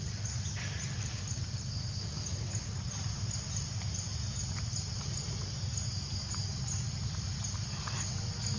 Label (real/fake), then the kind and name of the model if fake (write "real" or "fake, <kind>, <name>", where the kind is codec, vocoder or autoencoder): real